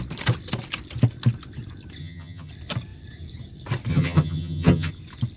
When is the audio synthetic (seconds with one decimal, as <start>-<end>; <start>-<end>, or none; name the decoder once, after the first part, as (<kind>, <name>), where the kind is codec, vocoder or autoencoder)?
2.0-2.5 (vocoder, HiFi-GAN); 3.9-4.9